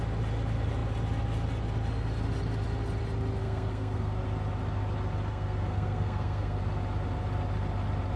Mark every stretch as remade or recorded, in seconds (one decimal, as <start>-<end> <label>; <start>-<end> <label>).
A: 0.0-3.4 recorded; 3.4-4.2 remade; 4.2-5.3 recorded; 5.3-6.6 remade; 6.6-8.2 recorded